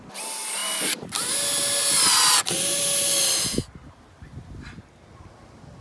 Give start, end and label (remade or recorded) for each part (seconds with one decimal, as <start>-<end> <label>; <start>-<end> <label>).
0.0-5.8 recorded